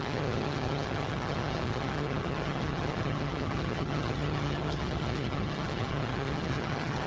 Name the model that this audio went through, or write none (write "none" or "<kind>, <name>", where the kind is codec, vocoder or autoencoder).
vocoder, HiFi-GAN